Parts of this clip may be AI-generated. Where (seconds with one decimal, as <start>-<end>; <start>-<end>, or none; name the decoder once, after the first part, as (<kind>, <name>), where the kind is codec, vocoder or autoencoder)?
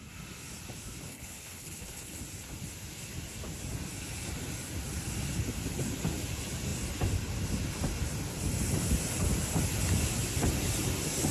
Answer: 1.1-2.2 (codec, HILCodec)